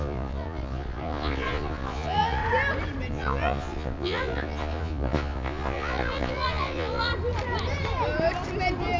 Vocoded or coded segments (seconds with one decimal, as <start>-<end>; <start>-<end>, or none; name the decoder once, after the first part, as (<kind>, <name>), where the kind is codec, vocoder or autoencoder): 0.0-2.4 (vocoder, Vocos); 3.1-7.1

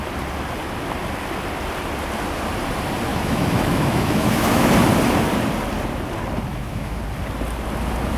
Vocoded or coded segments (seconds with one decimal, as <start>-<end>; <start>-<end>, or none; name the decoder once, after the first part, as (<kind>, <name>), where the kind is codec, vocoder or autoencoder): 3.1-4.7 (autoencoder, DAC-VAE); 6.5-7.0

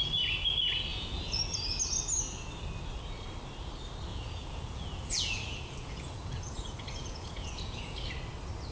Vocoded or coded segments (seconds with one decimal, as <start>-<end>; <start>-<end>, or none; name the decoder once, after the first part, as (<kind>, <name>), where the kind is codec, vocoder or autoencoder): 0.9-1.4 (vocoder, Vocos); 4.1-8.1

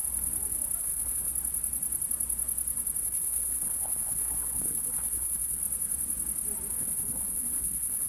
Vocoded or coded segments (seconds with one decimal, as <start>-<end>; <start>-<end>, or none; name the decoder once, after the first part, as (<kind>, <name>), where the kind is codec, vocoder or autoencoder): 0.8-1.3 (codec, HILCodec); 3.0-5.6; 6.7-8.1

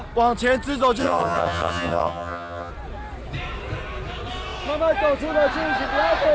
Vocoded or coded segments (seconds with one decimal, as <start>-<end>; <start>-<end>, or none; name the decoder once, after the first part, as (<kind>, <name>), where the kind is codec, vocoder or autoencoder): 1.0-2.7 (vocoder, HiFi-GAN)